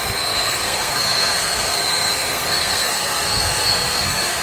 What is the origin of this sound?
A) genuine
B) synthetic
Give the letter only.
B